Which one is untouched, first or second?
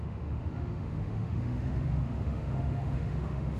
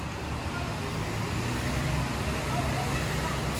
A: second